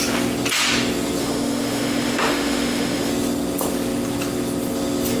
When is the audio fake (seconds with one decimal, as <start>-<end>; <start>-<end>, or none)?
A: 1.2-3.1